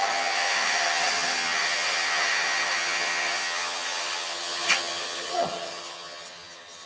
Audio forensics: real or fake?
fake